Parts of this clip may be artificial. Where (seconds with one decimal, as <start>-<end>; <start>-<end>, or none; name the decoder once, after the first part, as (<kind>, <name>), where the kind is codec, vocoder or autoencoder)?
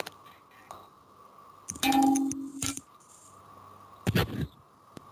2.5-3.5 (vocoder, BigVGAN v2); 4.2-5.1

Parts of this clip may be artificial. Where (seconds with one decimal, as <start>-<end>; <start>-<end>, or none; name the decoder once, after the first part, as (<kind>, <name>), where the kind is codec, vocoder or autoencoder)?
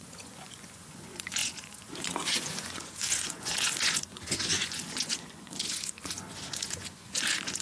0.0-7.6 (vocoder, Vocos)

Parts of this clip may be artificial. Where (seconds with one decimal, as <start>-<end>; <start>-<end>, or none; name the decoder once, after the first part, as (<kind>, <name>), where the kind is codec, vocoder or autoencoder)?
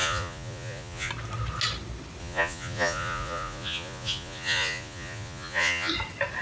0.0-1.1 (vocoder, Vocos); 2.2-5.9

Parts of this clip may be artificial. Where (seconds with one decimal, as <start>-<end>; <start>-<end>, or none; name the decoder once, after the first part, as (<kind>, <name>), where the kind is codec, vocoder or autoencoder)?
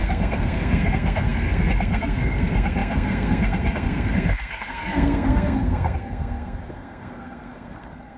0.0-8.2 (codec, SNAC)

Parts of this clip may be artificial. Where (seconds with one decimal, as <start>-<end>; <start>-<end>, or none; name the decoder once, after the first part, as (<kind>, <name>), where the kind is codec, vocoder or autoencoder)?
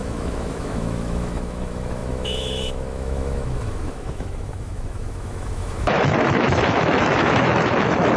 0.0-8.2 (autoencoder, DAC-VAE)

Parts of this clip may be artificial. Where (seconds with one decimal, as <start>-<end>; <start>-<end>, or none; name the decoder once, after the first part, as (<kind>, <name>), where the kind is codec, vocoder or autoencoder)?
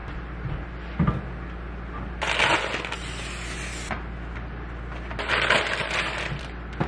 none